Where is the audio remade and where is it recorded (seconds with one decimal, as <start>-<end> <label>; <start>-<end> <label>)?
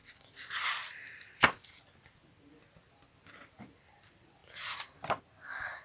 0.0-5.8 recorded